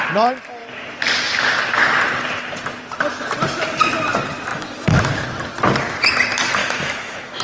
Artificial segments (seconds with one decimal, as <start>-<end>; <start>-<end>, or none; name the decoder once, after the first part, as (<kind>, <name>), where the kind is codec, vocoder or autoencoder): 4.5-5.0 (autoencoder, DAC-VAE); 6.6-7.4